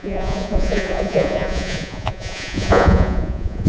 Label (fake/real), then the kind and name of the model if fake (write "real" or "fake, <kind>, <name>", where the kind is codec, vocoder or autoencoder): fake, vocoder, Vocos